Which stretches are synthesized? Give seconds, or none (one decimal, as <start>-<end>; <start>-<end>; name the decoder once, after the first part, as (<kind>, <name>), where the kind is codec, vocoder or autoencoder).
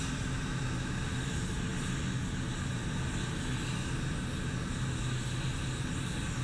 none